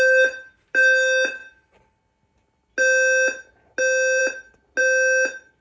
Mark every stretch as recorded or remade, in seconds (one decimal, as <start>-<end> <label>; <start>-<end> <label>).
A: 0.0-5.6 recorded